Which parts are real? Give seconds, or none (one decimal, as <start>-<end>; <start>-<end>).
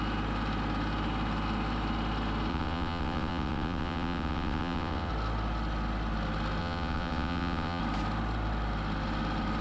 0.0-2.5; 5.1-6.6; 7.8-9.6